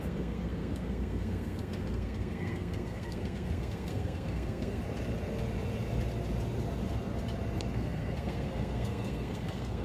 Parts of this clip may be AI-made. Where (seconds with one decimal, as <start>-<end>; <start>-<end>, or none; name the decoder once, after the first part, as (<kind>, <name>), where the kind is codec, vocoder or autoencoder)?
0.0-4.8 (codec, SNAC); 7.7-9.8